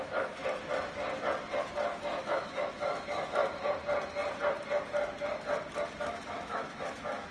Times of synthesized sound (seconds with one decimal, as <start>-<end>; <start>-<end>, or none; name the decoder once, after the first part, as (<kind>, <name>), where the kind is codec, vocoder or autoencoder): 0.0-0.4 (autoencoder, DAC-VAE); 2.2-3.4; 6.0-7.3